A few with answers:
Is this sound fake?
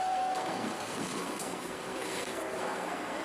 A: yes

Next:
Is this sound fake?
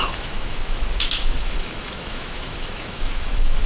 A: yes